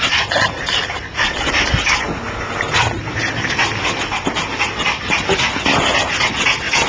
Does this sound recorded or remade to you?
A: recorded